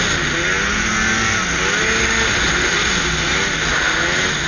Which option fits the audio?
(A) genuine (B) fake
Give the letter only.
A